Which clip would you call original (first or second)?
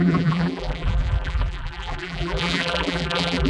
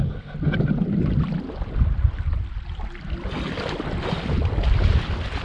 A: second